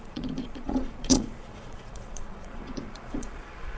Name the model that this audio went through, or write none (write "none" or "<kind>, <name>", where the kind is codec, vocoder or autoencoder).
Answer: vocoder, Vocos